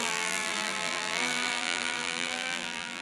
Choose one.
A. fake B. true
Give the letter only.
A